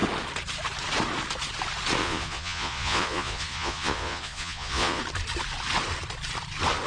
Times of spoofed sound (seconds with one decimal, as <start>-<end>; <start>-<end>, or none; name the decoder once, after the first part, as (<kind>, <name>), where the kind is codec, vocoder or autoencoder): 2.0-5.0 (vocoder, Vocos)